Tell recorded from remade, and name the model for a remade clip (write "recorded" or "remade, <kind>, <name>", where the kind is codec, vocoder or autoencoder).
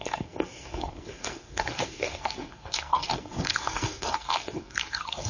remade, codec, SNAC